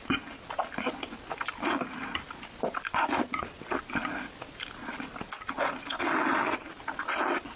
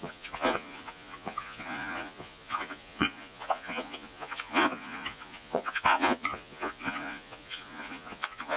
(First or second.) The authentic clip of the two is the first